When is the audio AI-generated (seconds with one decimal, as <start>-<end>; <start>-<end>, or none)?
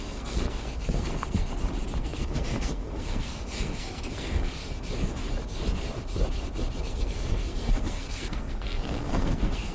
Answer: 0.0-1.5; 2.0-4.6; 6.8-9.7